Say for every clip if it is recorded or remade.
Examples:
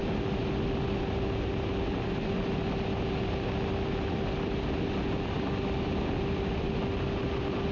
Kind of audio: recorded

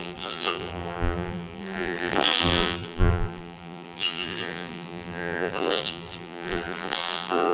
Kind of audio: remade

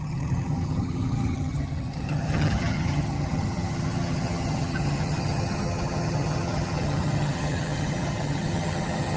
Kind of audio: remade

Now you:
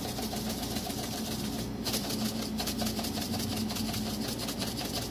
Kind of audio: recorded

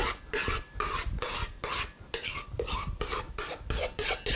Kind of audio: recorded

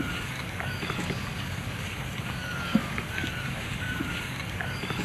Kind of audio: remade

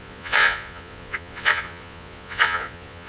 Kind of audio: remade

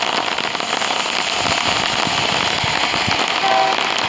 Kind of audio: recorded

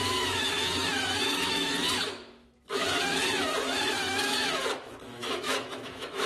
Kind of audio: remade